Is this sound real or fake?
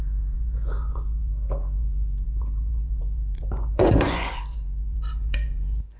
fake